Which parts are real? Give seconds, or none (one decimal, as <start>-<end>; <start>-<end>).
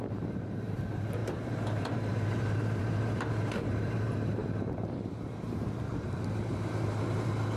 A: none